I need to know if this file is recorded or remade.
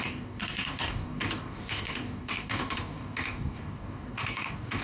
remade